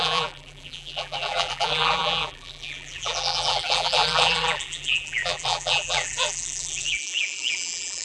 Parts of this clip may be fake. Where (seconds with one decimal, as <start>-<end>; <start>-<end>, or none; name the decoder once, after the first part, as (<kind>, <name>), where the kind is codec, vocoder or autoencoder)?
0.0-8.0 (vocoder, BigVGAN v2)